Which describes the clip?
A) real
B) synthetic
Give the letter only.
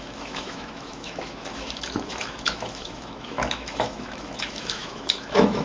B